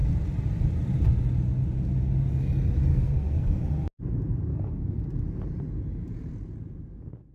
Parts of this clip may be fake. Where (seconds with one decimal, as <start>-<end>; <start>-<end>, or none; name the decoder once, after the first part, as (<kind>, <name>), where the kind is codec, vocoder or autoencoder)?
2.9-3.6 (codec, SNAC); 4.5-5.1